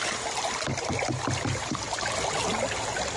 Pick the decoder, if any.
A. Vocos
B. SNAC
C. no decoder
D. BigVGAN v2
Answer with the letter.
C